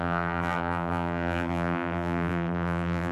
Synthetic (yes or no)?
yes